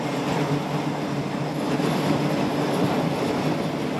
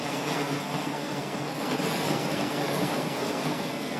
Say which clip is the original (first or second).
first